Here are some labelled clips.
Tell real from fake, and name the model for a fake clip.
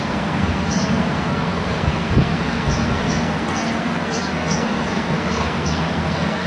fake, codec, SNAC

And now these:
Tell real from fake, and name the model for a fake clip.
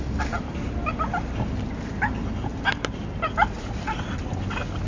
real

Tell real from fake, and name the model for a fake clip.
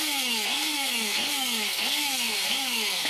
fake, codec, SNAC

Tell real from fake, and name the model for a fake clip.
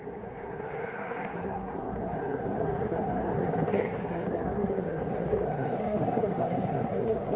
fake, codec, SNAC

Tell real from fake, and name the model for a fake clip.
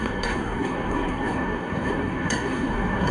fake, codec, SNAC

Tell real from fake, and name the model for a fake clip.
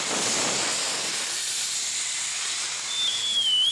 real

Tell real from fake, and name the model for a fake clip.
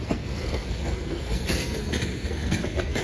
fake, codec, SNAC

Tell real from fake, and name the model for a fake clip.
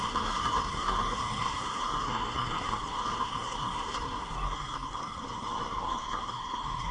fake, codec, SNAC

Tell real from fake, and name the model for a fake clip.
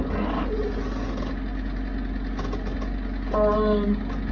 real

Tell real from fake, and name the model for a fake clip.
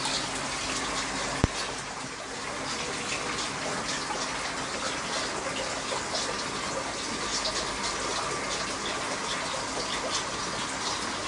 real